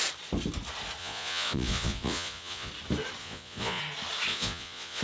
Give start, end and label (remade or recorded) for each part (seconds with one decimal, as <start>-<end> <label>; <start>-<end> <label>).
0.0-1.0 recorded; 1.0-2.7 remade; 2.7-3.2 recorded; 3.2-3.8 remade; 3.8-4.3 recorded; 4.3-5.0 remade